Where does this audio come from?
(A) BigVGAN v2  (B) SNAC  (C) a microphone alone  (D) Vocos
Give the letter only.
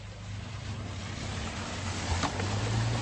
C